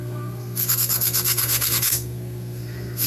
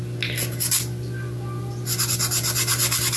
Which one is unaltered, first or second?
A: second